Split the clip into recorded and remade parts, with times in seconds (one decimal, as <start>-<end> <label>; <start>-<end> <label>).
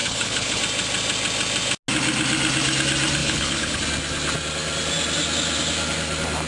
0.0-0.6 remade; 0.6-3.2 recorded; 3.2-3.8 remade; 3.8-6.5 recorded